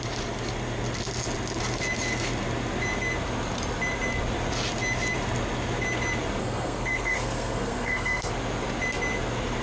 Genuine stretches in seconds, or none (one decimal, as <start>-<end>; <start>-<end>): 0.0-6.4; 8.3-9.6